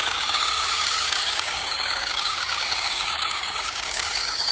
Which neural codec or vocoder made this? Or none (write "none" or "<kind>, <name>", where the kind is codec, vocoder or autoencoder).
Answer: codec, DAC